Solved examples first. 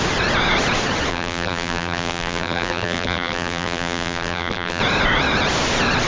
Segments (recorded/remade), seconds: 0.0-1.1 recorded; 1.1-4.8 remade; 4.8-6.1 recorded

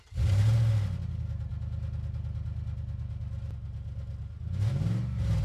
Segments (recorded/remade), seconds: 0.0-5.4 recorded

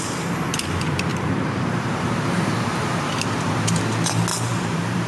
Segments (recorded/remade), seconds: 0.0-1.1 recorded; 1.1-3.8 remade; 3.8-4.3 recorded; 4.3-5.1 remade

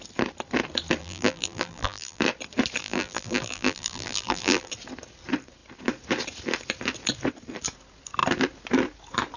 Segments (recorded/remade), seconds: 0.0-1.0 recorded; 1.0-2.2 remade; 2.2-2.8 recorded; 2.8-4.7 remade; 4.7-9.4 recorded

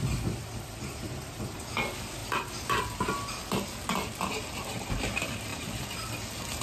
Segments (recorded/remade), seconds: 0.0-6.6 recorded